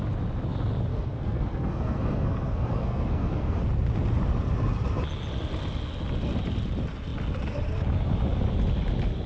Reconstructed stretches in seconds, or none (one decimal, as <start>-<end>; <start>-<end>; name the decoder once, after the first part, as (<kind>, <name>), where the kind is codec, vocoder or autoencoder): 0.9-3.6 (codec, SNAC)